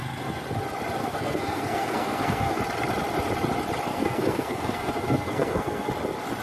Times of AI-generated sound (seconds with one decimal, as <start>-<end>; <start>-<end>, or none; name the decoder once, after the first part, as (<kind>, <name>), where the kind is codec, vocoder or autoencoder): 1.0-2.6 (codec, SNAC); 3.9-5.9